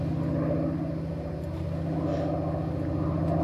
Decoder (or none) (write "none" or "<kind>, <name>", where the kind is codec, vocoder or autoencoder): none